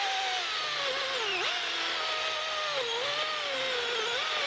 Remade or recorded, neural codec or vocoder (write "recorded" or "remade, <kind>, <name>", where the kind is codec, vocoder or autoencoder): recorded